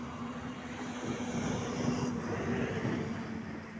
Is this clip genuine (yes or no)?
yes